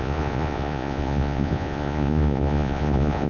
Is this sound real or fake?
fake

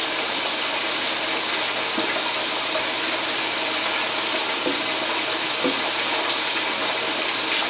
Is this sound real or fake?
real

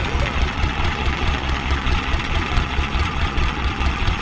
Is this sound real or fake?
fake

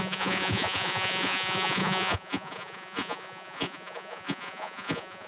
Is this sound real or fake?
fake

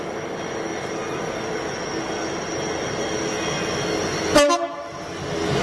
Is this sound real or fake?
real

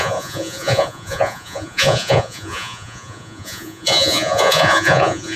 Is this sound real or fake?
fake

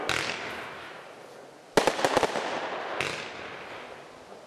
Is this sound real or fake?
real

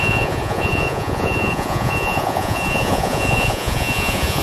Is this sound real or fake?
fake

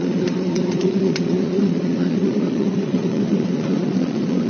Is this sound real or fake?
fake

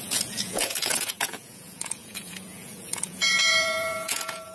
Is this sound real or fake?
fake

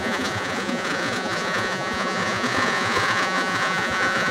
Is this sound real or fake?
fake